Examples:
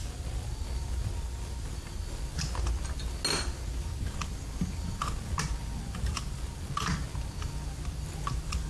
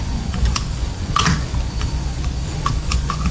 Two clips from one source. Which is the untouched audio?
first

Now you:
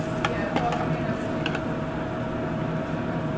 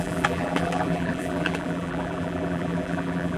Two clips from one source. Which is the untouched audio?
first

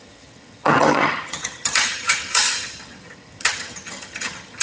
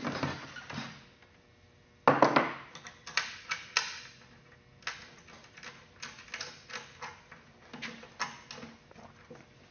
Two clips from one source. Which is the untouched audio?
second